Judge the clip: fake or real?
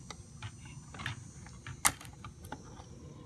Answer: real